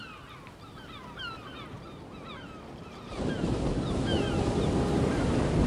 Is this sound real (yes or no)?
yes